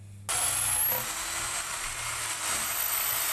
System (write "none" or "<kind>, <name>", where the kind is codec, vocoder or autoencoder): none